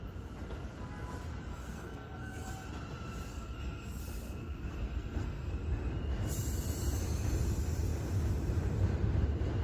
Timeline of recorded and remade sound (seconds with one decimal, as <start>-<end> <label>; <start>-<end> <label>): 0.0-1.5 recorded; 1.5-2.5 remade; 2.5-3.3 recorded; 3.3-4.0 remade; 4.0-4.4 recorded; 4.4-5.5 remade; 5.5-9.6 recorded